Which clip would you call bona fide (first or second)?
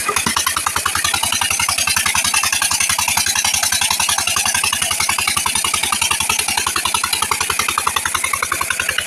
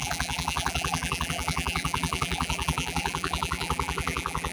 first